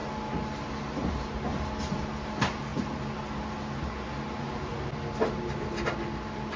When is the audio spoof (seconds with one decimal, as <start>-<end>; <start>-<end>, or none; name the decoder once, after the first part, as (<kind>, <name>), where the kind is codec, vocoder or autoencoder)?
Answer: none